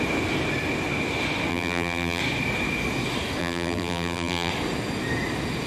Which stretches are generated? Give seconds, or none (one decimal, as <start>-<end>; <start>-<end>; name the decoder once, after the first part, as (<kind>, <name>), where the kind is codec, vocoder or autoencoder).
1.5-2.2 (vocoder, BigVGAN v2); 3.4-4.5